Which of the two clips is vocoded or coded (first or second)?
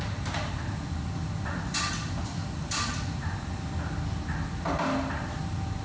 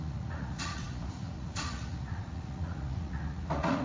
second